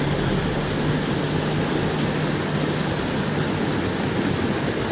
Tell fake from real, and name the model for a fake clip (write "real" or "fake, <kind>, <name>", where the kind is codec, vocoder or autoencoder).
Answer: real